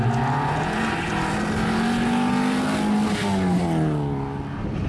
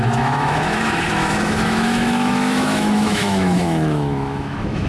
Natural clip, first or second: first